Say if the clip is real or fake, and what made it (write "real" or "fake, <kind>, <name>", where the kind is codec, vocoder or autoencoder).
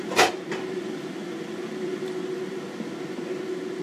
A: real